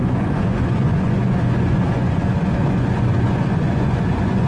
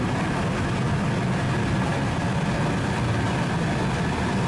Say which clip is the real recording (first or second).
second